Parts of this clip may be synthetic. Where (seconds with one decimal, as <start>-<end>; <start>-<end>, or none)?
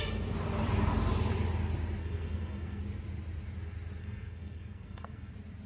2.0-2.8; 4.0-5.3